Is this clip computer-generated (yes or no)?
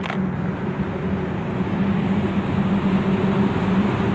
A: no